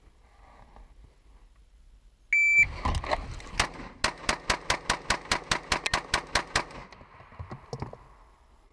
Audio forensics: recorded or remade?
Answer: recorded